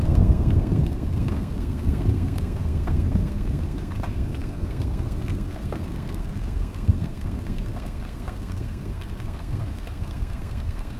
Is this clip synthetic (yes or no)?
yes